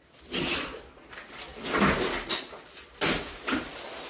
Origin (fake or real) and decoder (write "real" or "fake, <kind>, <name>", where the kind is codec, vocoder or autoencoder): real